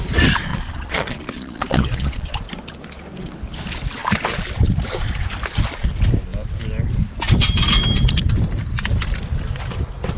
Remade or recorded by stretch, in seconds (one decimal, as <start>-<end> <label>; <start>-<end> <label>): 0.0-0.5 recorded; 0.5-2.5 remade; 2.5-10.2 recorded